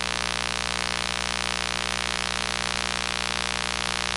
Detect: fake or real real